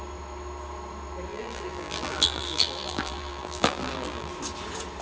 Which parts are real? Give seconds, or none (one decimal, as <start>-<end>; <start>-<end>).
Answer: 0.0-1.3; 4.3-5.0